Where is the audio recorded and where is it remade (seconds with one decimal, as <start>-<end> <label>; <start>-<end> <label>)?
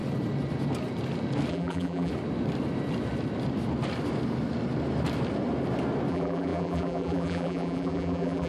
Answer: 0.0-1.5 recorded; 1.5-2.1 remade; 2.1-6.1 recorded; 6.1-8.5 remade